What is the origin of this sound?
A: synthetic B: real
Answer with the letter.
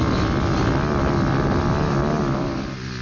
B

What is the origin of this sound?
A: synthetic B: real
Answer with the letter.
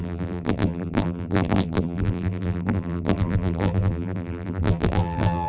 A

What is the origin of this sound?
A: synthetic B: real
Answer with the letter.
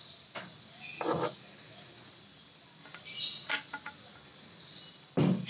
B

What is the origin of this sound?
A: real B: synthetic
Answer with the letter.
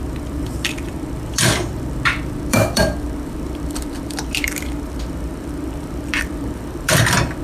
B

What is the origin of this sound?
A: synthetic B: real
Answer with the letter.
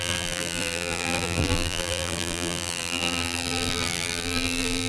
A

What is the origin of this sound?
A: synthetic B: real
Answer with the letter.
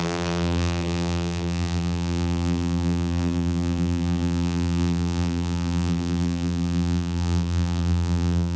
A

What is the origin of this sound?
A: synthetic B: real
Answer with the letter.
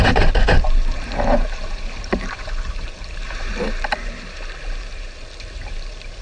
A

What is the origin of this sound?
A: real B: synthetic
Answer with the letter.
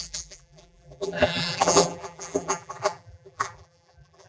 B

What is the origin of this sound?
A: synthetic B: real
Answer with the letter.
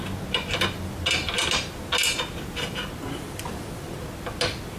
B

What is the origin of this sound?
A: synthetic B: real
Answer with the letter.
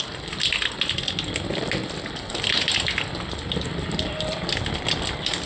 B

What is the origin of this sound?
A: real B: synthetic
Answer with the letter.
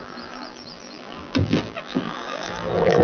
B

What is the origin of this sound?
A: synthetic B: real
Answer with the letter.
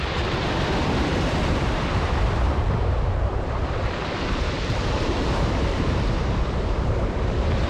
A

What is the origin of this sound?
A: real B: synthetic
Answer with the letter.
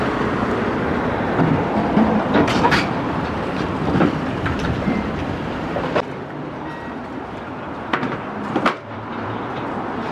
B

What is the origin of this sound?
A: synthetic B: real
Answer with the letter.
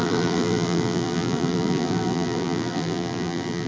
A